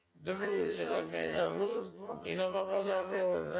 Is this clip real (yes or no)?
no